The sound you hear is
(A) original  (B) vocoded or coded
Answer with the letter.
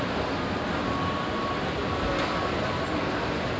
A